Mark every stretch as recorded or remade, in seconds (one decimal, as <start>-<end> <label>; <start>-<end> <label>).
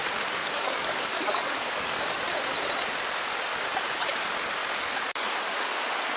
0.0-0.4 recorded; 0.4-2.2 remade; 2.2-4.6 recorded; 4.6-5.3 remade; 5.3-6.2 recorded